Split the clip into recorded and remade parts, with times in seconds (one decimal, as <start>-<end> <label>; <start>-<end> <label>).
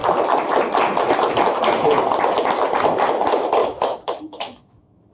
0.0-3.6 recorded; 3.6-5.1 remade